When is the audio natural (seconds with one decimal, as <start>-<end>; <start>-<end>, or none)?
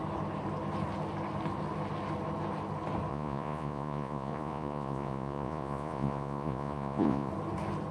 0.0-3.1; 7.3-7.9